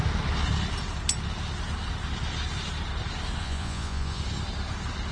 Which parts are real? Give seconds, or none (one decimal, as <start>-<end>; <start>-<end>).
0.0-3.4; 4.2-5.1